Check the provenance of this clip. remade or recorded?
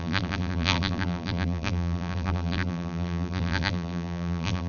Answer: remade